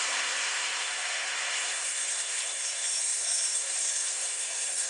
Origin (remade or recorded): remade